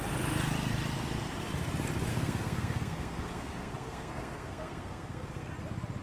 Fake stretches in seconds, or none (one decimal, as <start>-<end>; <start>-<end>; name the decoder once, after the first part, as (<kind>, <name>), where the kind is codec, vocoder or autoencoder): 2.1-5.5 (codec, SNAC)